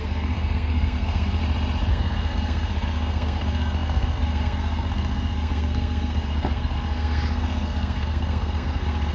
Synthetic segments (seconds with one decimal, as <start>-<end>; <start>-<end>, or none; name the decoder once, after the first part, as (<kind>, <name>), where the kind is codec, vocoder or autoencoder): 0.0-1.4 (codec, SNAC); 1.9-9.1

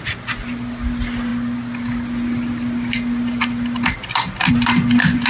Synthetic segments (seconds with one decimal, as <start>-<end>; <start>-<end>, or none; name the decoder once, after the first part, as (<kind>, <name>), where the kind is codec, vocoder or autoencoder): none